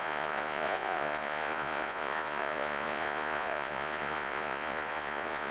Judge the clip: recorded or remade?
remade